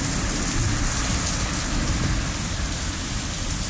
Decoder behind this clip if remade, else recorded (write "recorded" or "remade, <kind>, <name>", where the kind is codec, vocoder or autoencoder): recorded